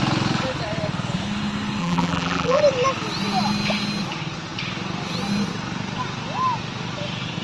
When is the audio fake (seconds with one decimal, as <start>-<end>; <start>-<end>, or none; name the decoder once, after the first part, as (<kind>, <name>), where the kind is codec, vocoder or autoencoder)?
1.8-2.6 (vocoder, BigVGAN v2)